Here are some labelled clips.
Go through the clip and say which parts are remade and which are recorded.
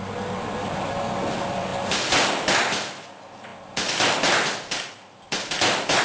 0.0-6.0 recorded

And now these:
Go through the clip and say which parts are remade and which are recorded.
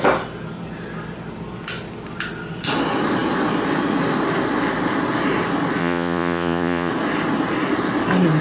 0.0-5.8 recorded; 5.8-6.9 remade; 6.9-8.4 recorded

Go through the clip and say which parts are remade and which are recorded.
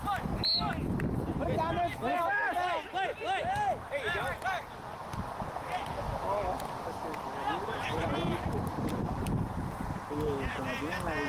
0.0-11.3 recorded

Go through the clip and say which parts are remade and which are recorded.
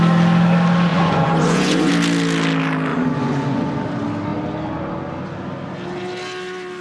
0.0-0.9 recorded; 0.9-1.9 remade; 1.9-2.9 recorded; 2.9-3.7 remade; 3.7-6.8 recorded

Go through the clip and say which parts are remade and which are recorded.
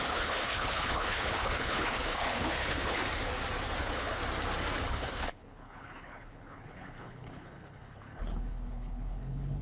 0.0-3.0 remade; 3.0-3.8 recorded; 3.8-4.2 remade; 4.2-4.9 recorded; 4.9-9.6 remade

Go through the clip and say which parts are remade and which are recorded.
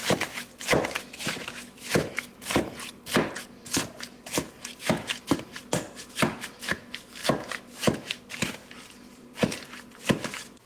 0.0-2.3 remade; 2.3-4.8 recorded; 4.8-8.6 remade; 8.6-10.0 recorded; 10.0-10.7 remade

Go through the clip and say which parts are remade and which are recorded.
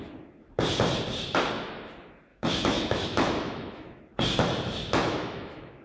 0.0-2.3 recorded; 2.3-4.0 remade; 4.0-5.0 recorded; 5.0-5.8 remade